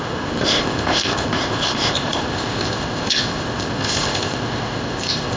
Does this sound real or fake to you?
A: fake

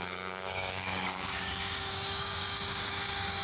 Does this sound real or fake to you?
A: fake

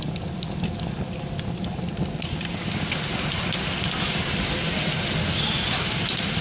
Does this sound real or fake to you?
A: real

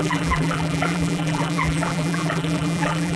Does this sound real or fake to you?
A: fake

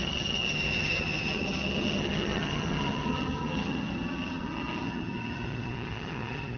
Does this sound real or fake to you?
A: fake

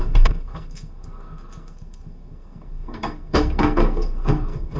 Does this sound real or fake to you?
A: fake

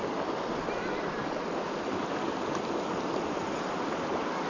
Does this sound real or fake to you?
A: real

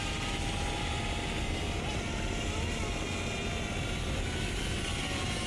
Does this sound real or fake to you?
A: real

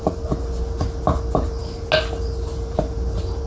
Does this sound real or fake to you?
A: real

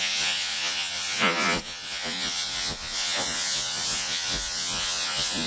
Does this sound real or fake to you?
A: fake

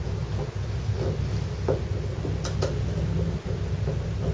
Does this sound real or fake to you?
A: real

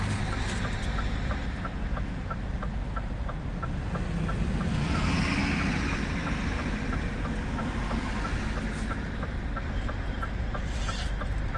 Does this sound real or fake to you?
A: real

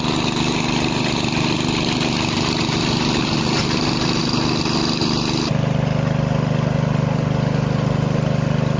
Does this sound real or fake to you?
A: real